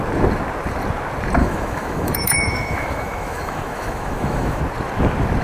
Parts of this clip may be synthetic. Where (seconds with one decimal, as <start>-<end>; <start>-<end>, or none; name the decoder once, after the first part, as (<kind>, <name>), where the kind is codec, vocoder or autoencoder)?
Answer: 1.4-4.6 (autoencoder, DAC-VAE)